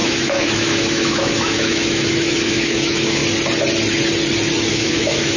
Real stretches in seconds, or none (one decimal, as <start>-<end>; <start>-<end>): 3.2-4.7